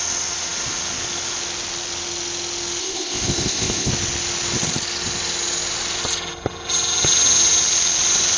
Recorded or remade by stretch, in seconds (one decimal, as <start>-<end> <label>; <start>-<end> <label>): 0.0-2.8 recorded; 2.8-3.9 remade; 3.9-8.4 recorded